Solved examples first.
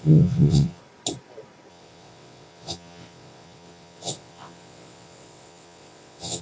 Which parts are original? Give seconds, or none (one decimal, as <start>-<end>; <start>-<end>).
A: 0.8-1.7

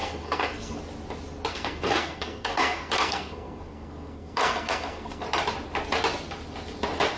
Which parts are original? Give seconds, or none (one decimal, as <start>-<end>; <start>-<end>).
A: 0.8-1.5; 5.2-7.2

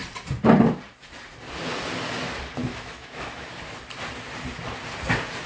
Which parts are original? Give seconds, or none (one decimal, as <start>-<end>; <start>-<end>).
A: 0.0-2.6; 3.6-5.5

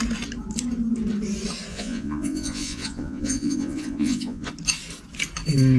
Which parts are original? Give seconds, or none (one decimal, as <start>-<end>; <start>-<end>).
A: 0.0-1.7; 4.5-5.8

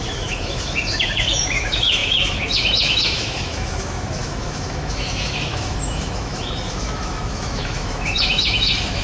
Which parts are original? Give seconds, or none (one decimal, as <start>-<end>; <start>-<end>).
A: none